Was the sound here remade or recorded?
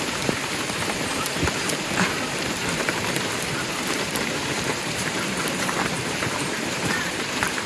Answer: remade